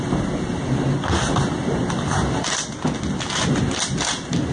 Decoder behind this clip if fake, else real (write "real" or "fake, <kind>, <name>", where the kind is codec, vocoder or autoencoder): real